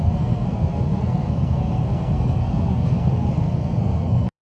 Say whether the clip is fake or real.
fake